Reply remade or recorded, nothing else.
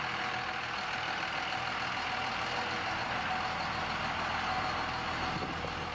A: recorded